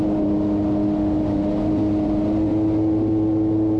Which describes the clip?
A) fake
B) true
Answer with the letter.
B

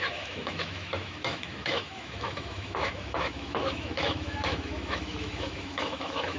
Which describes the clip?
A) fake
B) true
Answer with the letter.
A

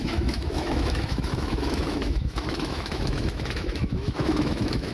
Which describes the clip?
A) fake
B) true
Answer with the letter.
A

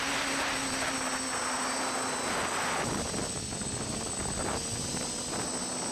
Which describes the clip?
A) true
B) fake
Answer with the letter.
A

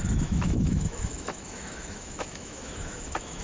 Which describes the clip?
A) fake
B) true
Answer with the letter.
A